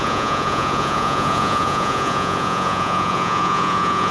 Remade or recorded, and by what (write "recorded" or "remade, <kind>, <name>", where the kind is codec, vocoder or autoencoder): remade, vocoder, Vocos